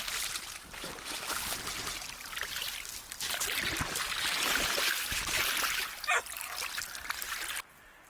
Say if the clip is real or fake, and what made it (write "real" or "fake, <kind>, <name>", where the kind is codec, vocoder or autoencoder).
real